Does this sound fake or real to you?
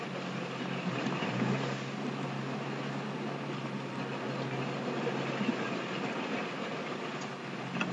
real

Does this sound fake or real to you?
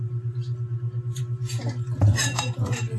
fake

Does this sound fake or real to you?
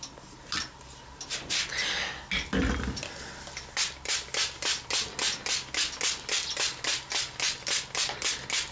real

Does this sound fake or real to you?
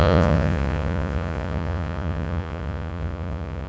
fake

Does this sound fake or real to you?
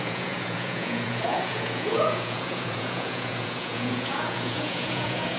fake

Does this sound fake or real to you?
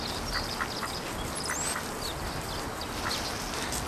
real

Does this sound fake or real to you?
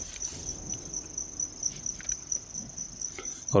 real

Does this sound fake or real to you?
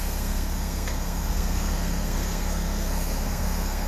fake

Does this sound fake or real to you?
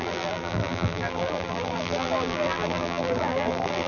fake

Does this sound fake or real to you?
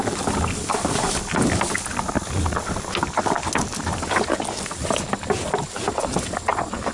real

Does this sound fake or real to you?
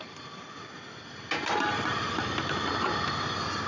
real